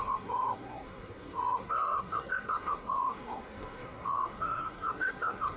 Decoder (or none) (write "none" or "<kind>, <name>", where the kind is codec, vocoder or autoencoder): codec, SNAC